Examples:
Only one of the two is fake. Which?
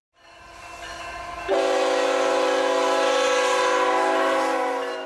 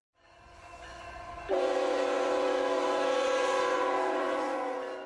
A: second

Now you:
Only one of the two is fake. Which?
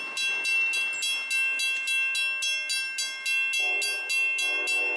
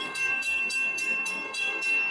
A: second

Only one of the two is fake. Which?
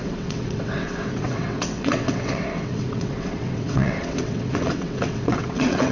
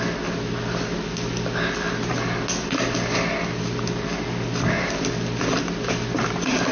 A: first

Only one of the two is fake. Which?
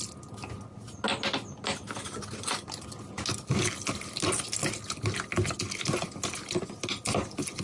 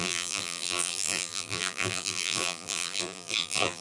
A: second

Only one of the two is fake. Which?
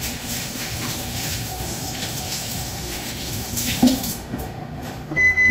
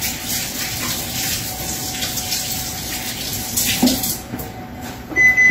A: first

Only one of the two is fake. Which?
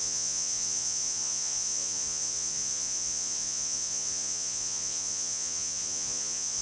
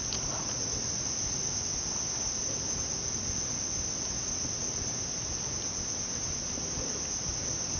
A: first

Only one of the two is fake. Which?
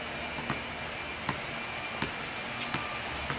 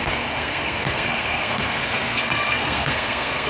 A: second